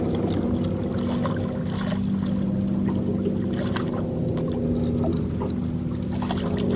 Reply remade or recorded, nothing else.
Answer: recorded